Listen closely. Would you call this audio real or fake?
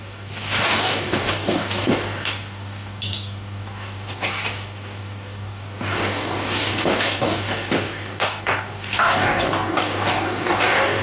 fake